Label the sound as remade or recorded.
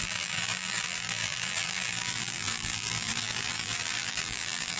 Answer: remade